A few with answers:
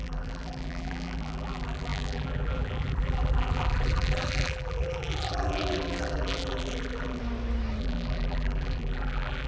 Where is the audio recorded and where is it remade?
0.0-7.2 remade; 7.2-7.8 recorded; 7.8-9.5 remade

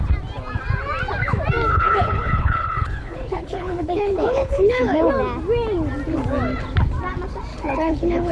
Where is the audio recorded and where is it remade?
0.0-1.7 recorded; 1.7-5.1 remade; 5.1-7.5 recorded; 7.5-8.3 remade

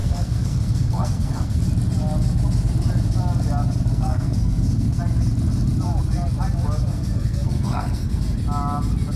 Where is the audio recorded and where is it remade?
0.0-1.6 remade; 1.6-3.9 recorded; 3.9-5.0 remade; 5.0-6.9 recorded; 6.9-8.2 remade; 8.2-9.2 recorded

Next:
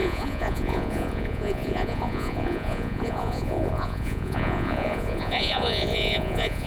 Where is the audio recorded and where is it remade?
0.0-6.7 remade

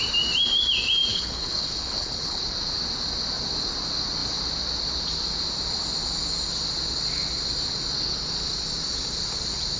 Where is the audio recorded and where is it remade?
0.0-1.1 recorded; 1.1-2.4 remade; 2.4-9.8 recorded